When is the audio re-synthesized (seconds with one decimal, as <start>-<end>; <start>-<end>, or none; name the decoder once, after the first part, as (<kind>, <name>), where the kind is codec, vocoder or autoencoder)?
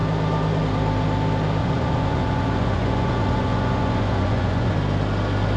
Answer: 1.6-4.7 (vocoder, Vocos)